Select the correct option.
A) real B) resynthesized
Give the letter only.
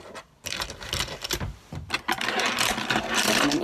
A